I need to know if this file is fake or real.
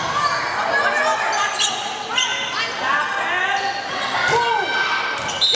real